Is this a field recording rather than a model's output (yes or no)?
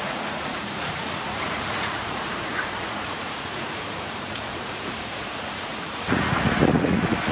no